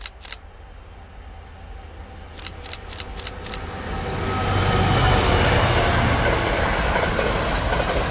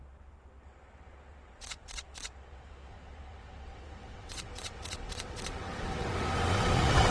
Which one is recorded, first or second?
first